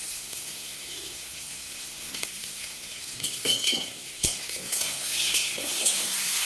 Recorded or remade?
remade